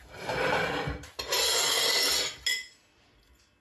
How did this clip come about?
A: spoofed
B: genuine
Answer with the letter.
B